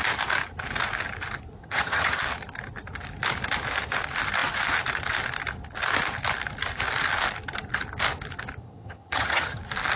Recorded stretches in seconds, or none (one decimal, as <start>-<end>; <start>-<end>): 0.0-1.6; 2.2-8.6; 9.6-10.0